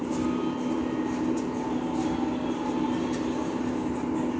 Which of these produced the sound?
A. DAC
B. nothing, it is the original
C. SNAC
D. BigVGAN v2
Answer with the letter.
B